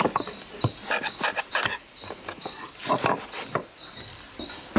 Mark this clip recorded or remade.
recorded